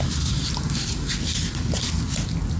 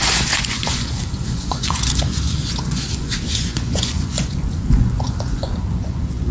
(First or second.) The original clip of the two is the first